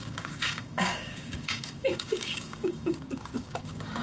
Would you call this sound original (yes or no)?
no